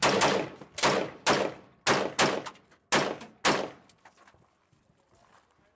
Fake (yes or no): no